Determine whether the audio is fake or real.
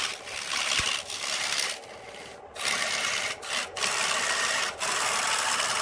real